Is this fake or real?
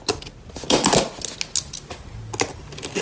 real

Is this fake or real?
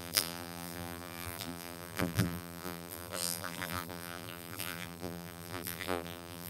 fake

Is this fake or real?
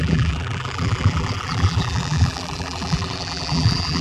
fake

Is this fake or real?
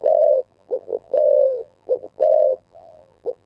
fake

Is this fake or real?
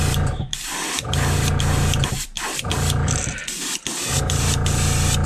fake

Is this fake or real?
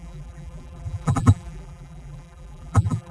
fake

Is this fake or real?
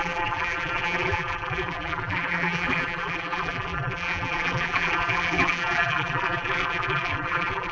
fake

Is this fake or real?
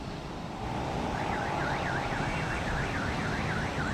fake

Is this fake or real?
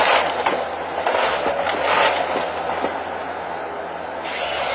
real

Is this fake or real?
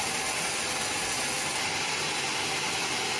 real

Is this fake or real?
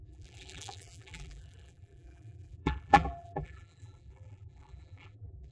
fake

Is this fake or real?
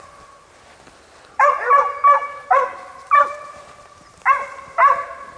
fake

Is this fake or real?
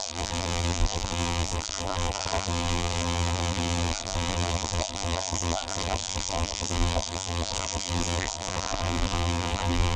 fake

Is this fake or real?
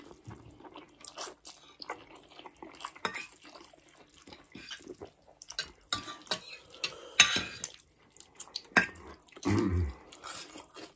real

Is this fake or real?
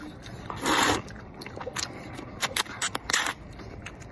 fake